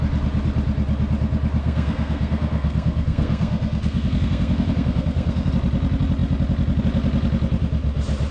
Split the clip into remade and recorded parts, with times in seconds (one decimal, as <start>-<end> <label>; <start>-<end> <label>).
0.0-1.6 recorded; 1.6-5.5 remade; 5.5-8.3 recorded